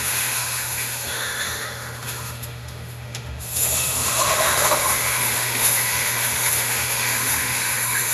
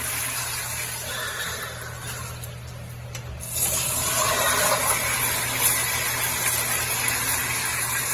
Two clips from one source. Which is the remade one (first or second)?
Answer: first